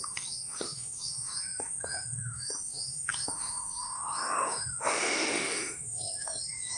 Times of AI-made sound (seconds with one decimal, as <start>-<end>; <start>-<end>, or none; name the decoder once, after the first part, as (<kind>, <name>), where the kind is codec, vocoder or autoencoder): 0.0-6.8 (autoencoder, DAC-VAE)